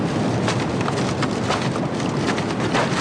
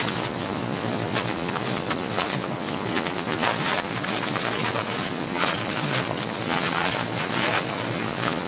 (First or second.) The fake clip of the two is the second